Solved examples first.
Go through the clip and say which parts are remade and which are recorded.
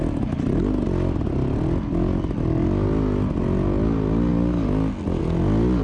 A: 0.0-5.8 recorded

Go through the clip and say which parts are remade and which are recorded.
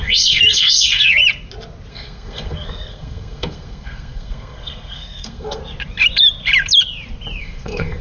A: 0.0-1.2 remade; 1.2-1.9 recorded; 1.9-5.6 remade; 5.6-7.4 recorded; 7.4-8.0 remade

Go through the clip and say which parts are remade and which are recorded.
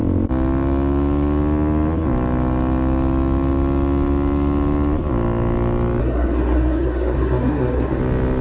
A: 0.0-6.0 recorded; 6.0-8.0 remade; 8.0-8.4 recorded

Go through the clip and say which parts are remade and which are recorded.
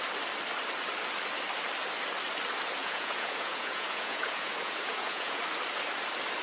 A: 0.0-2.8 recorded; 2.8-5.4 remade; 5.4-6.4 recorded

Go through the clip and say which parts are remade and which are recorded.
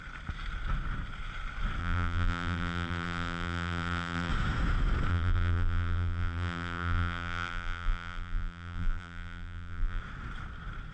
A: 0.0-1.8 recorded; 1.8-4.3 remade; 4.3-5.1 recorded; 5.1-10.0 remade; 10.0-10.9 recorded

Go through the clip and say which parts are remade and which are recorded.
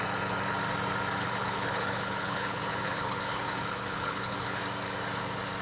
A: 0.0-1.2 recorded; 1.2-4.6 remade; 4.6-5.6 recorded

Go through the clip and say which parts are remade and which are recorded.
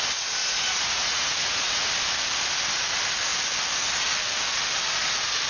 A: 0.0-0.4 recorded; 0.4-1.9 remade; 1.9-5.5 recorded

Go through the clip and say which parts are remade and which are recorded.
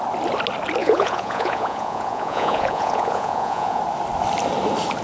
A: 0.0-0.8 recorded; 0.8-3.8 remade; 3.8-5.0 recorded